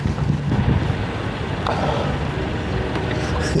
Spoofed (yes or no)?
no